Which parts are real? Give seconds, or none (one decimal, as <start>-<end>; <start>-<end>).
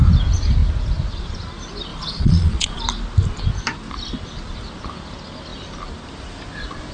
0.0-1.9; 2.8-6.9